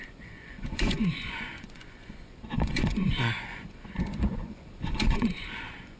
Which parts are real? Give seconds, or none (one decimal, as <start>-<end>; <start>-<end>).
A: none